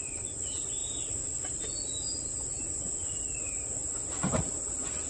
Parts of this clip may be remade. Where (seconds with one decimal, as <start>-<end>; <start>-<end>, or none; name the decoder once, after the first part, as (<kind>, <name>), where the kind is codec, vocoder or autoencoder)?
none